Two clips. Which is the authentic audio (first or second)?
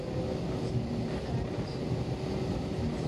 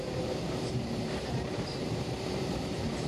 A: first